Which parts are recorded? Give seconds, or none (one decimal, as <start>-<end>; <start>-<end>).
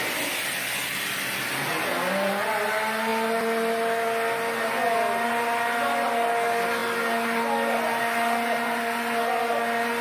0.0-10.0